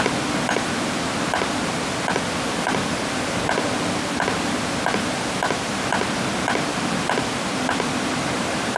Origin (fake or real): fake